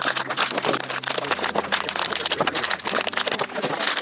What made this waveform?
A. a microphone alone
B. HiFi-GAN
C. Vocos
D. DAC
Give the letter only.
A